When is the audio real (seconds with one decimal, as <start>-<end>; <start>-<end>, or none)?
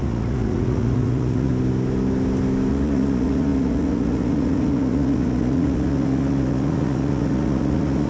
1.5-2.7